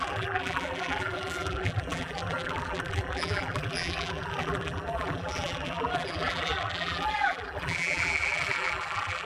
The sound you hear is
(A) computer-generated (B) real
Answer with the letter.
A